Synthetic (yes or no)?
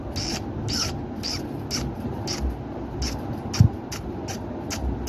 no